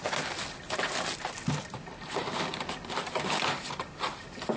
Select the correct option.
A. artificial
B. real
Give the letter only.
B